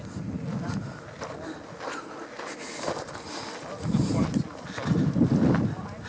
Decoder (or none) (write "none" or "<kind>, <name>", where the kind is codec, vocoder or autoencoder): none